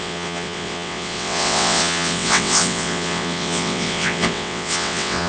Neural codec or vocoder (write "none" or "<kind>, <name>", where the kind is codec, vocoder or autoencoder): vocoder, WaveNeXt